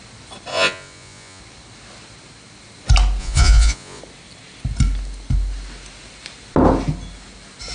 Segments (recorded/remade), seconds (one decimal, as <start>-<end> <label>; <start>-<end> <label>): 0.0-0.5 recorded; 0.5-1.4 remade; 1.4-3.2 recorded; 3.2-4.0 remade; 4.0-7.7 recorded